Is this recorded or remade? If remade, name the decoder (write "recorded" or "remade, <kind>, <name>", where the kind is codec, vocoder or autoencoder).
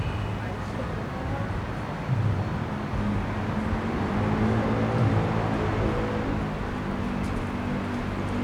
recorded